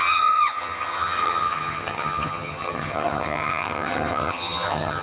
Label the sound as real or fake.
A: fake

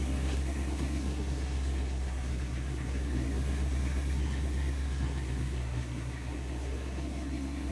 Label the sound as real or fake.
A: fake